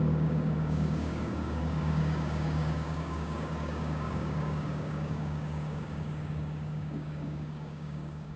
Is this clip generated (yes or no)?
yes